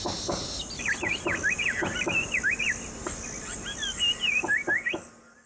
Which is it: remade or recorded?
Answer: recorded